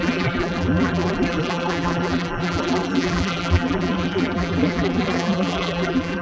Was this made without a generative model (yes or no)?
no